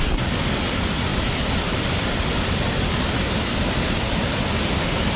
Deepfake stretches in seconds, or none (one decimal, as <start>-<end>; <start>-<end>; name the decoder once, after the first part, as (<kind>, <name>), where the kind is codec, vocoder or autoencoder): none